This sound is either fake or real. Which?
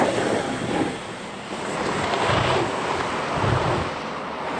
real